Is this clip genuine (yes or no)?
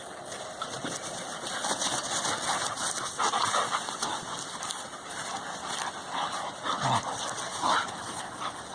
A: yes